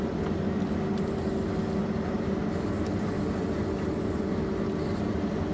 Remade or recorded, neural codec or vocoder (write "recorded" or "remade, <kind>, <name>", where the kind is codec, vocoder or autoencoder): recorded